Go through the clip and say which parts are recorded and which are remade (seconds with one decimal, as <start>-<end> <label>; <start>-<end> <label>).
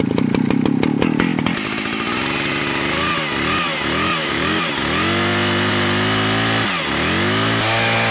0.0-4.2 recorded; 4.2-4.7 remade; 4.7-8.1 recorded